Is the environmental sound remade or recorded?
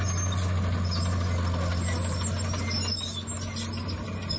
recorded